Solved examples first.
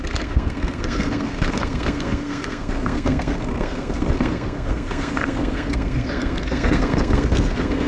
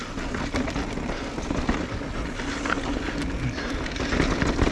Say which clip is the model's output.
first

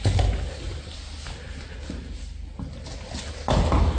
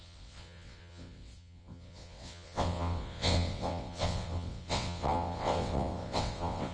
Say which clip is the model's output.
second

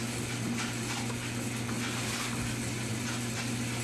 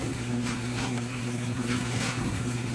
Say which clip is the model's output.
second